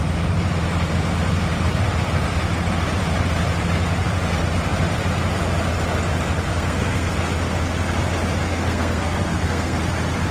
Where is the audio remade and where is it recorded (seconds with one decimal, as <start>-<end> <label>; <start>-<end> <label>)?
0.0-6.5 recorded; 6.5-7.1 remade; 7.1-8.5 recorded; 8.5-9.8 remade; 9.8-10.3 recorded